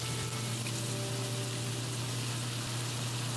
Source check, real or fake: real